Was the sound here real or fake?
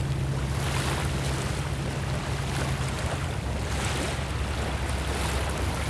real